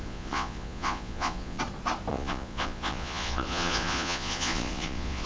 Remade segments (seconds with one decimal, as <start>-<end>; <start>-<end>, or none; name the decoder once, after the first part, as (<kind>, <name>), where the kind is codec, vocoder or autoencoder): 0.0-1.6 (vocoder, Vocos); 2.1-5.3